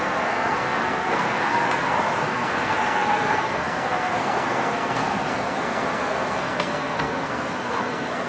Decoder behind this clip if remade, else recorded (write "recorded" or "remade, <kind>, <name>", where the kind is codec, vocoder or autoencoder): remade, codec, SNAC